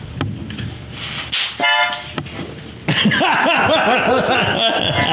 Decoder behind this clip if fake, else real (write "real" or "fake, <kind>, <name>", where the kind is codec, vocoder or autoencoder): real